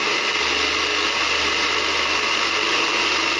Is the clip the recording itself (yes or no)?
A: yes